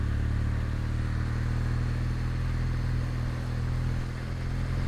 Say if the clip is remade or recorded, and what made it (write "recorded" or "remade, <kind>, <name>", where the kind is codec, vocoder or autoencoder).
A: recorded